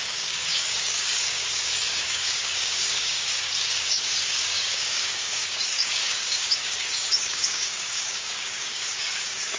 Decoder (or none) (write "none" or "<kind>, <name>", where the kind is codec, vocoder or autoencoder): codec, DAC